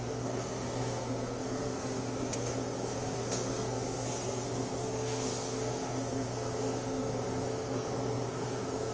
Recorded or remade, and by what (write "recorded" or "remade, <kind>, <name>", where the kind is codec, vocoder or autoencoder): remade, codec, SNAC